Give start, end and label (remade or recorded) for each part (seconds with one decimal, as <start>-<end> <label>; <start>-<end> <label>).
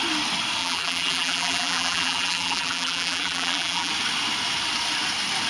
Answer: 0.0-0.6 recorded; 0.6-3.9 remade; 3.9-5.5 recorded